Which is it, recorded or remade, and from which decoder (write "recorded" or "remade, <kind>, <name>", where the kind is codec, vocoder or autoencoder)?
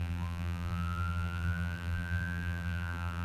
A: remade, vocoder, BigVGAN v2